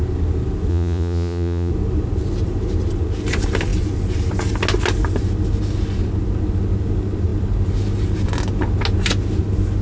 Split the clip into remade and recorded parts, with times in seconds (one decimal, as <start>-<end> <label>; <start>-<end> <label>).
0.0-0.7 recorded; 0.7-1.7 remade; 1.7-9.8 recorded